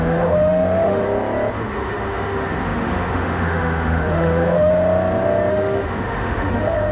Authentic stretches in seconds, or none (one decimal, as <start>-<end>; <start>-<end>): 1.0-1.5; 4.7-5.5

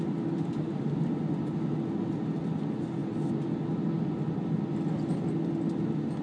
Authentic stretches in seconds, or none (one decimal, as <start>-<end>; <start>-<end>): 0.0-6.2

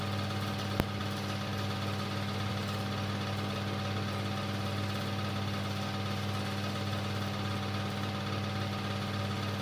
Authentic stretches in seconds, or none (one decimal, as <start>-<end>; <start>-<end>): 0.0-9.6

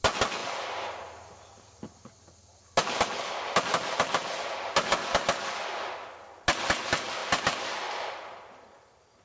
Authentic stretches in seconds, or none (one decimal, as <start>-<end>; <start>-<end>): 0.0-9.2

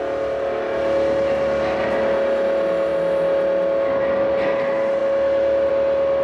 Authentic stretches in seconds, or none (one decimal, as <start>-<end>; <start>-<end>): 0.0-6.2

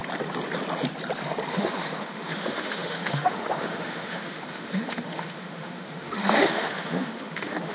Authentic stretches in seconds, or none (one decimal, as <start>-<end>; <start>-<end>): 0.0-1.5